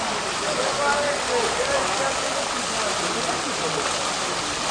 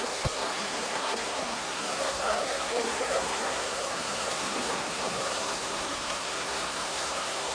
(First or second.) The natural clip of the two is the first